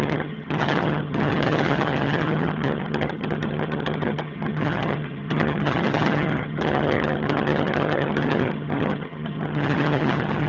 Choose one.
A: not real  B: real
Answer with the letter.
A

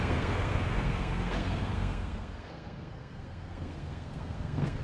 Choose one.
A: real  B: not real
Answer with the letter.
B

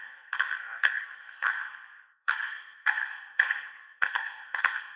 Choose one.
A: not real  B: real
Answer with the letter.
A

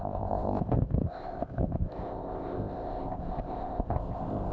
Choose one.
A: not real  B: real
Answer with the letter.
A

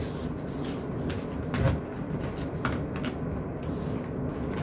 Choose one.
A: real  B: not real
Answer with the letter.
A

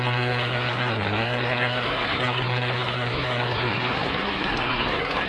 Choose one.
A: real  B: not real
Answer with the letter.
B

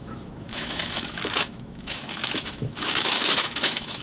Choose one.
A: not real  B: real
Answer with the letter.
A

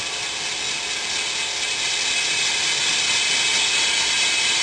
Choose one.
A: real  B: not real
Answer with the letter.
A